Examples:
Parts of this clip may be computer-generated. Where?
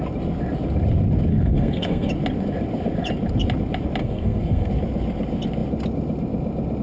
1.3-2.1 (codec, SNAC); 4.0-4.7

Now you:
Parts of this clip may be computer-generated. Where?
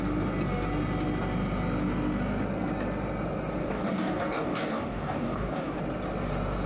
3.6-5.8 (codec, DAC)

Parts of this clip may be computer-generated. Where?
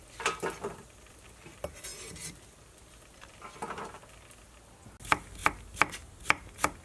none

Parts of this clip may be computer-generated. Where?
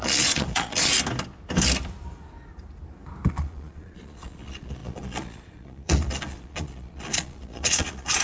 0.0-0.9 (vocoder, Vocos); 3.3-8.2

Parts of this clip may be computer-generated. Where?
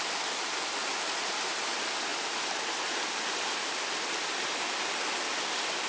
none